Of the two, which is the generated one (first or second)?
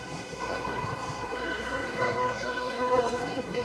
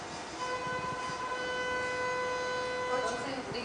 first